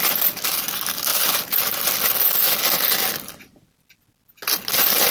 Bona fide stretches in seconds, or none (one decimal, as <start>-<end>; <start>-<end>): 0.0-5.1